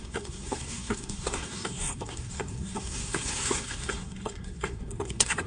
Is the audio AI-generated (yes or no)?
yes